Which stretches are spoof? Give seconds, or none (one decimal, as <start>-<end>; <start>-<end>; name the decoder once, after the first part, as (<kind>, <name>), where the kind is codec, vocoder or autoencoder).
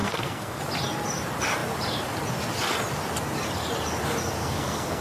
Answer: 0.0-0.6 (codec, SNAC); 4.4-5.0